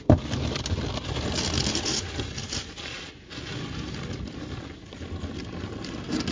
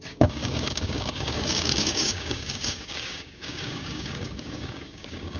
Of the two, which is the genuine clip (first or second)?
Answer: first